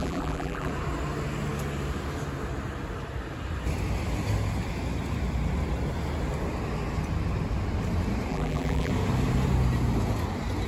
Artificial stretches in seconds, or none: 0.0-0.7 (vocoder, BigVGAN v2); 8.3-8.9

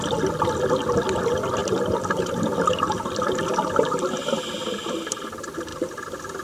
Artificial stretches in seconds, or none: none

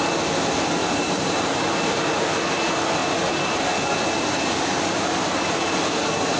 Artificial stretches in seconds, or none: 0.8-2.2 (vocoder, BigVGAN v2)

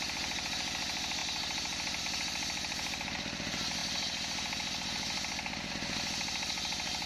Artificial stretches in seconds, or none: none